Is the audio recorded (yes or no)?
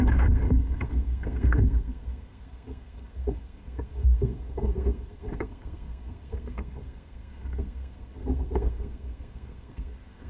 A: no